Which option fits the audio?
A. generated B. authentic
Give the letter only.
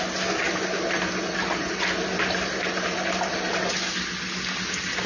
B